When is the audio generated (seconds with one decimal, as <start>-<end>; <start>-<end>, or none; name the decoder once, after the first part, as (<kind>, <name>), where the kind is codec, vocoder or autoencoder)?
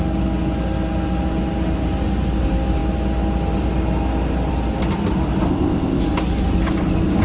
5.5-6.0 (codec, ZipCodec)